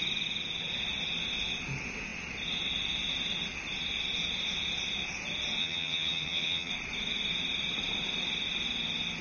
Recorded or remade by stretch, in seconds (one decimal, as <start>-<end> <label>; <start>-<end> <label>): 0.0-5.6 recorded; 5.6-6.7 remade; 6.7-9.2 recorded